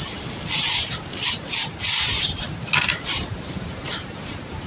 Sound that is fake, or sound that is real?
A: fake